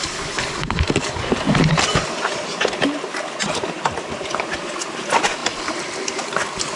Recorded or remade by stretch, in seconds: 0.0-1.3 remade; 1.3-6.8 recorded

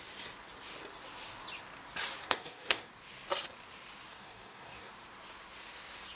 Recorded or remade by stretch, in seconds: 0.0-2.2 recorded; 2.2-2.9 remade; 2.9-4.1 recorded; 4.1-4.9 remade; 4.9-6.2 recorded